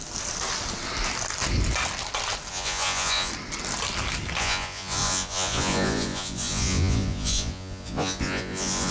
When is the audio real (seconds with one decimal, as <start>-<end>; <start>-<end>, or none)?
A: 0.0-2.5; 3.3-4.4